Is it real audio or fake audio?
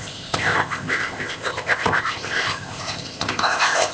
fake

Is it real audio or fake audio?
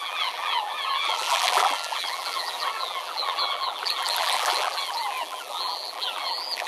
fake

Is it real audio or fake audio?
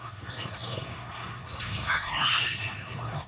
fake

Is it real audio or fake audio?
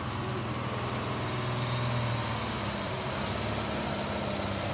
real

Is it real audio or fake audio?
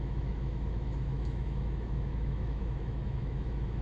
fake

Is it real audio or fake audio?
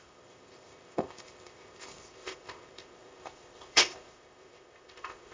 fake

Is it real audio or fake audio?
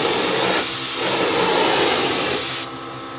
real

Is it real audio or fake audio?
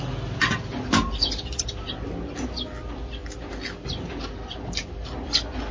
real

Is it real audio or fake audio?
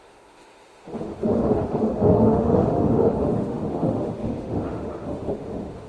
fake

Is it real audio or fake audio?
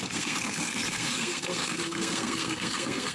fake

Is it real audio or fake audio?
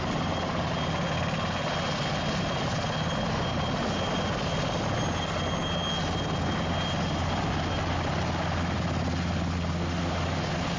real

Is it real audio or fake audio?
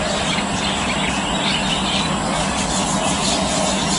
real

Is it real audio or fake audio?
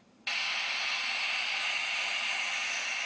real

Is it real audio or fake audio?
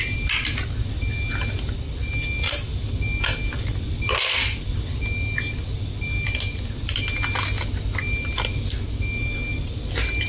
real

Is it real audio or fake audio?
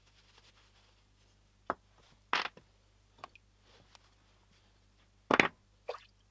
real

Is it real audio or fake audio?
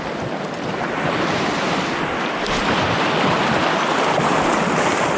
real